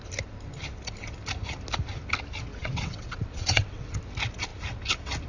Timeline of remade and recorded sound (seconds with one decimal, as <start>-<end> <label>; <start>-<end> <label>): 0.0-2.5 recorded; 2.5-4.0 remade; 4.0-5.3 recorded